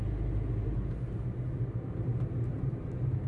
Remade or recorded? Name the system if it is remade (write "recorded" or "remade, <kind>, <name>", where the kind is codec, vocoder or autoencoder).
recorded